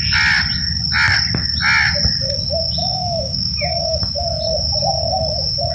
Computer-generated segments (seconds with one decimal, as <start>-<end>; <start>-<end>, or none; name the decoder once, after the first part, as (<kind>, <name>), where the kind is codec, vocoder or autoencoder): 2.8-4.0 (autoencoder, DAC-VAE)